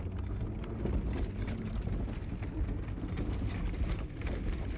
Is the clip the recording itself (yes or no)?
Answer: yes